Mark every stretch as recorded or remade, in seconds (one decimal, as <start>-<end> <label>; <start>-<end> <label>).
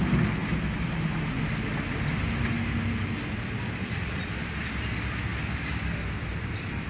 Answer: 0.0-3.8 recorded; 3.8-4.3 remade; 4.3-6.9 recorded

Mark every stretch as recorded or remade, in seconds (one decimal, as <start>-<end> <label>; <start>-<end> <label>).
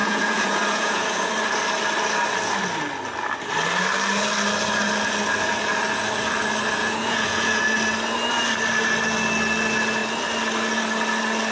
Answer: 0.0-1.3 remade; 1.3-6.8 recorded; 6.8-7.6 remade; 7.6-11.5 recorded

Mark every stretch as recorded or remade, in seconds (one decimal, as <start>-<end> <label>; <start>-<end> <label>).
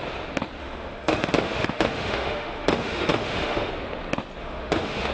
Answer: 0.0-0.6 recorded; 0.6-3.7 remade; 3.7-4.4 recorded; 4.4-5.1 remade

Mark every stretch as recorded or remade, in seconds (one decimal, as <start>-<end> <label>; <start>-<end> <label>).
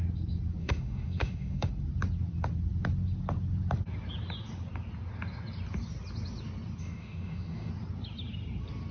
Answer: 0.0-0.6 recorded; 0.6-1.7 remade; 1.7-6.8 recorded; 6.8-7.7 remade; 7.7-8.9 recorded